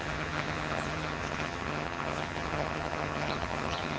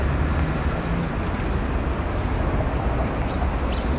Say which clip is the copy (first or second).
first